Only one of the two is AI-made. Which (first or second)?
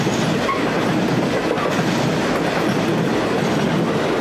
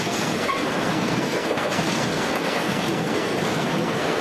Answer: second